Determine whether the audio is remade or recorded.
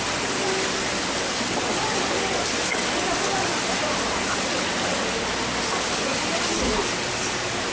recorded